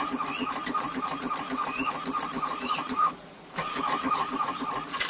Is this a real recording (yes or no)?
no